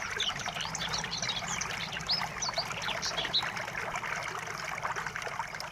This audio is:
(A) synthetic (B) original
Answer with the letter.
B